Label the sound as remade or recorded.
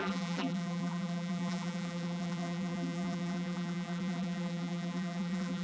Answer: remade